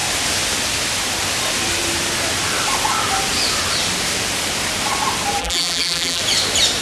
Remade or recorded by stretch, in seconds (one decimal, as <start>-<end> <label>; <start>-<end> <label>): 0.0-5.4 recorded; 5.4-6.2 remade; 6.2-6.8 recorded